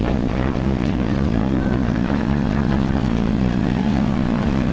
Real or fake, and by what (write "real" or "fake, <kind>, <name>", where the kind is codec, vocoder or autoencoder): fake, vocoder, Vocos